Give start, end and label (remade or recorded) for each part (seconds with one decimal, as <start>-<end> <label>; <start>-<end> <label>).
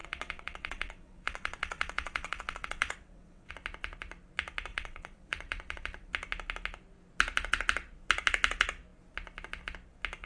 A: 0.0-3.5 remade; 3.5-4.7 recorded; 4.7-6.1 remade; 6.1-10.3 recorded